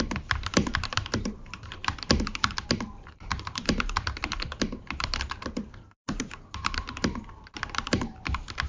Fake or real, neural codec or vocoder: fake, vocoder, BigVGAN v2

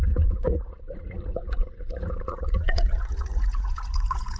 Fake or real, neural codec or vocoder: fake, vocoder, Vocos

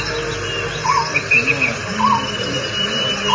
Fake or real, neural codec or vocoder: real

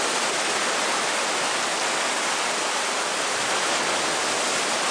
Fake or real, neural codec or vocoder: real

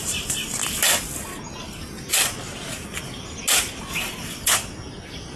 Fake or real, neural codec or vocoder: real